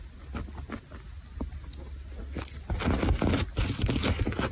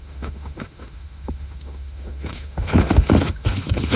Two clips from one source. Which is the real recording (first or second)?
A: first